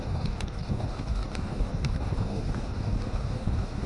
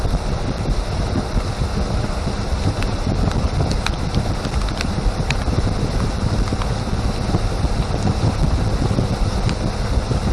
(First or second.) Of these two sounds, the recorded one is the second